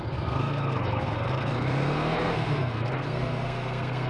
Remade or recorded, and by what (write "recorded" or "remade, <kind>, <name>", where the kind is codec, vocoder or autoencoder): remade, codec, SNAC